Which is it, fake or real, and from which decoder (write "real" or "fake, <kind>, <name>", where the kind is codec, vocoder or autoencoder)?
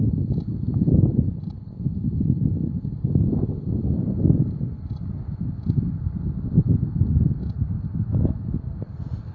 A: real